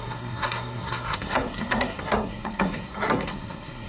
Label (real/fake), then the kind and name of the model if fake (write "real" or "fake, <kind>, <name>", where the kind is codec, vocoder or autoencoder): fake, codec, SNAC